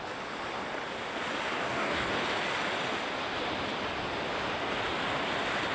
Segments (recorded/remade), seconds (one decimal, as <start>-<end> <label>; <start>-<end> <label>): 0.0-1.5 recorded; 1.5-2.1 remade; 2.1-5.7 recorded